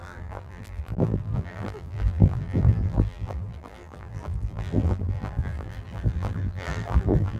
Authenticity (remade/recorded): remade